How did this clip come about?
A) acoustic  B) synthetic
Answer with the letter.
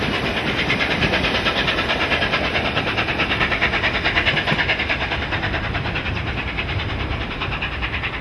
B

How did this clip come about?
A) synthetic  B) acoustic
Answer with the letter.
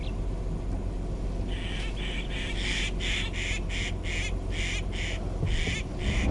B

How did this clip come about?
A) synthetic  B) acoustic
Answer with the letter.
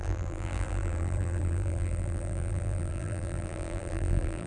A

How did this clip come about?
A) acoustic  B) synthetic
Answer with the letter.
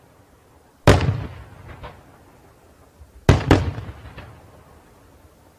A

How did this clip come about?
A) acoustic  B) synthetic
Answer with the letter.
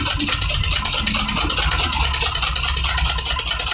A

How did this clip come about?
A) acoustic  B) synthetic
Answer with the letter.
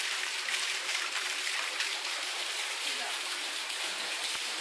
B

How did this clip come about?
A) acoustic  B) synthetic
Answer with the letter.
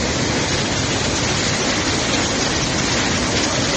A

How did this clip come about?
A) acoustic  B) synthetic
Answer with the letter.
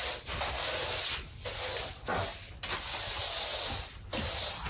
A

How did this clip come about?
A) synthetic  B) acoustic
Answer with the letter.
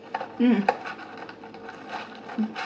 B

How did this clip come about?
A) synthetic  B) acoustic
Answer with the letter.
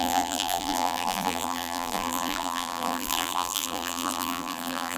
A